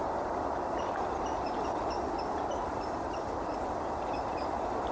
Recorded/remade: remade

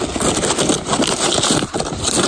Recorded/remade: recorded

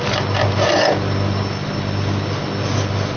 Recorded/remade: recorded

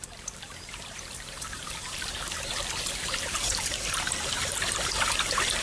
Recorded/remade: remade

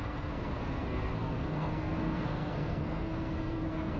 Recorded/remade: remade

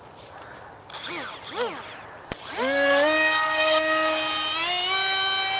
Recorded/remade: recorded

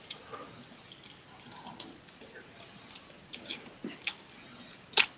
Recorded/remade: recorded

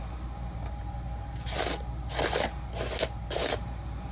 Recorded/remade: recorded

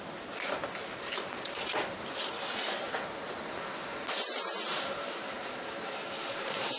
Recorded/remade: recorded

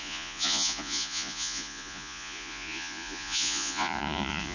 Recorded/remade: remade